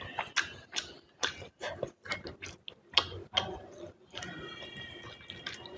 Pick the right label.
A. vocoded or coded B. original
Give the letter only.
B